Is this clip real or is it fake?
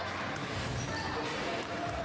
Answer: real